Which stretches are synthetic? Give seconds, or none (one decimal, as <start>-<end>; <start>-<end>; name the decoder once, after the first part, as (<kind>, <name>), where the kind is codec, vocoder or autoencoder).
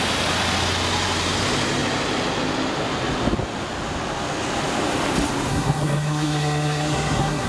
5.5-7.5 (codec, SNAC)